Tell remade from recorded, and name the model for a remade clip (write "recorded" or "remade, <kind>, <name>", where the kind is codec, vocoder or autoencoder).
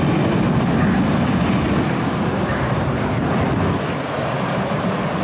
recorded